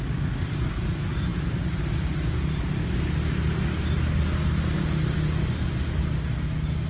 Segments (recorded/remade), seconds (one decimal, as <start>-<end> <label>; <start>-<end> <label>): 0.0-1.3 recorded; 1.3-1.9 remade; 1.9-6.9 recorded